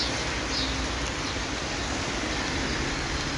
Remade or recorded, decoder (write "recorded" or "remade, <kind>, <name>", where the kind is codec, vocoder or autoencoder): recorded